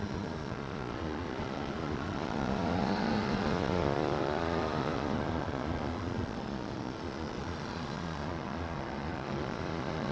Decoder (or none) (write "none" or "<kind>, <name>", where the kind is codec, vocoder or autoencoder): vocoder, Vocos